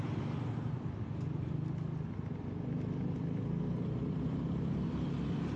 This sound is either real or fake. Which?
real